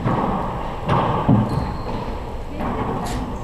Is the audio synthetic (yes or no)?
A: no